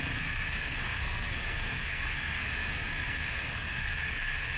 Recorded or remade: remade